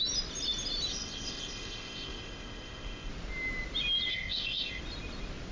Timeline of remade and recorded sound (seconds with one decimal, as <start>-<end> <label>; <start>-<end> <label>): 0.0-0.9 recorded; 0.9-3.1 remade; 3.1-4.1 recorded; 4.1-4.8 remade; 4.8-5.5 recorded